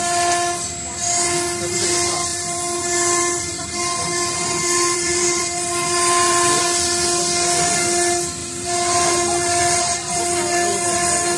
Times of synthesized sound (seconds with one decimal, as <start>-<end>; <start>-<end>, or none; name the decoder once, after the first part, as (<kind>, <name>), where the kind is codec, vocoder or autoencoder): 2.3-6.6 (vocoder, BigVGAN v2); 8.4-10.2